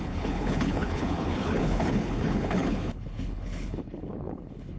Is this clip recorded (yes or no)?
no